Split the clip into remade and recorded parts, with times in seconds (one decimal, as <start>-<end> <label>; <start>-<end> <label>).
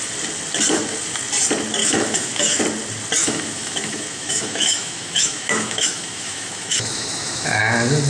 0.0-1.8 recorded; 1.8-2.6 remade; 2.6-3.2 recorded; 3.2-7.6 remade; 7.6-8.1 recorded